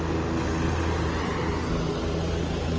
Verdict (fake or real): real